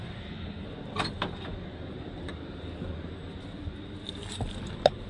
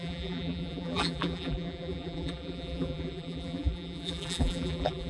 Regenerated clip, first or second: second